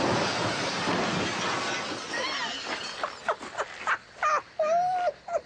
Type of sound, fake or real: real